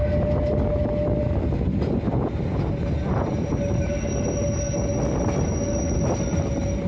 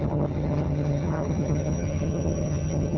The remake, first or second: second